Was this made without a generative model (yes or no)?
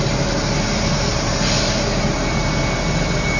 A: yes